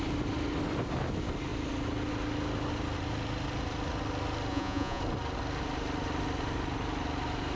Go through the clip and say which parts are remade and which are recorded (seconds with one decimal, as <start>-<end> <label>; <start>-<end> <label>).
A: 0.0-4.5 recorded; 4.5-5.0 remade; 5.0-7.6 recorded